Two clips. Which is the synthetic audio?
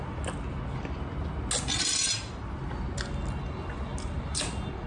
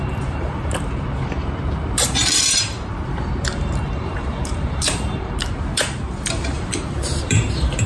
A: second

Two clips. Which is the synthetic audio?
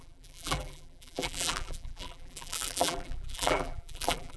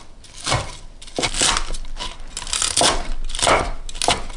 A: first